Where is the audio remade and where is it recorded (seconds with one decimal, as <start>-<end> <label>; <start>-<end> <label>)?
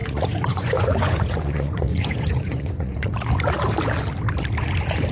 0.0-3.1 remade; 3.1-5.1 recorded